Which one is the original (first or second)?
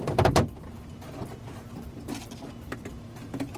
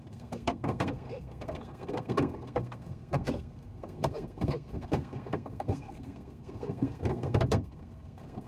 first